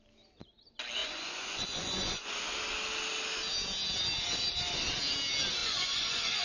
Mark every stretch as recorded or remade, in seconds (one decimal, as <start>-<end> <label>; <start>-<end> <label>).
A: 0.0-1.0 recorded; 1.0-2.4 remade; 2.4-5.6 recorded; 5.6-6.4 remade